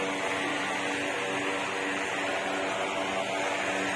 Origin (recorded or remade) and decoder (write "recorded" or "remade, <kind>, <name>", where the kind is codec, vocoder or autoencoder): recorded